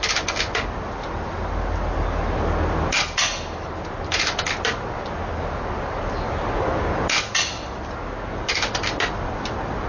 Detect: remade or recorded recorded